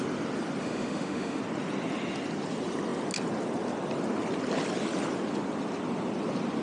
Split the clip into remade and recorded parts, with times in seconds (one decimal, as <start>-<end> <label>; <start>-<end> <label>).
0.0-0.6 recorded; 0.6-1.4 remade; 1.4-6.6 recorded